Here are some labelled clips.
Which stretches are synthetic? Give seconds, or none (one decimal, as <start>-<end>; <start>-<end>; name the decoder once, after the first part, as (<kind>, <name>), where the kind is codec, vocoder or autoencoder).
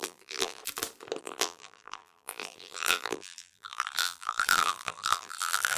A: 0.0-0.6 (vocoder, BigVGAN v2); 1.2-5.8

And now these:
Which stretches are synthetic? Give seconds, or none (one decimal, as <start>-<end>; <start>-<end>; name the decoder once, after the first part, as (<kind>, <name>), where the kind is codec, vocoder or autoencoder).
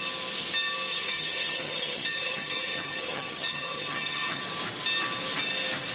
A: 0.9-4.4 (vocoder, HiFi-GAN)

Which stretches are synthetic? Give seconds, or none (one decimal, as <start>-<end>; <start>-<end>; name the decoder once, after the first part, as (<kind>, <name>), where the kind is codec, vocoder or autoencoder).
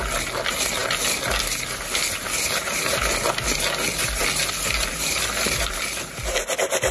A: none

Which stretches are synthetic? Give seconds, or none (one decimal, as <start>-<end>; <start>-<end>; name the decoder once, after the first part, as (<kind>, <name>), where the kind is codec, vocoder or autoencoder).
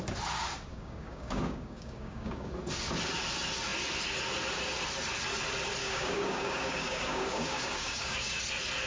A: 0.7-2.5 (codec, DAC); 5.8-8.4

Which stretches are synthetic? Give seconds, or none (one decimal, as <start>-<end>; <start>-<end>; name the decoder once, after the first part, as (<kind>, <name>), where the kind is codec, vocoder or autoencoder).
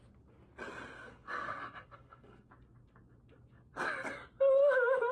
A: 1.0-2.5 (codec, SNAC)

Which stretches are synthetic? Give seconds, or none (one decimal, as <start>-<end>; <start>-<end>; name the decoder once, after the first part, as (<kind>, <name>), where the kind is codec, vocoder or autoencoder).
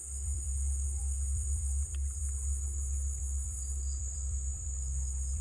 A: 0.0-0.5 (vocoder, BigVGAN v2); 1.0-2.2; 3.2-5.4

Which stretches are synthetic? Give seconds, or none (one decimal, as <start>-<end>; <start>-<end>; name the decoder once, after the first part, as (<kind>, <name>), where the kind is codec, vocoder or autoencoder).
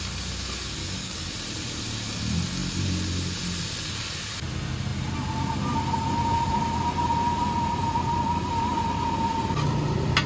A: 0.8-1.3 (codec, DAC)